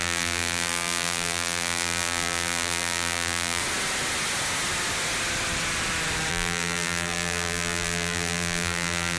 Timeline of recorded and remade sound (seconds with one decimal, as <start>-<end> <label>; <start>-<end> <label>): 0.0-3.6 remade; 3.6-6.3 recorded; 6.3-9.2 remade